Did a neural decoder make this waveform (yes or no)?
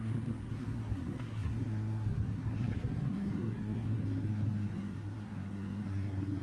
yes